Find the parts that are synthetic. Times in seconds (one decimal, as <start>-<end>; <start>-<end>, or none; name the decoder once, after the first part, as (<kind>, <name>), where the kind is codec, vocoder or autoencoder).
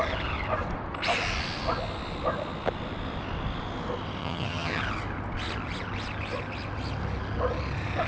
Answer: 4.2-4.8 (vocoder, HiFi-GAN)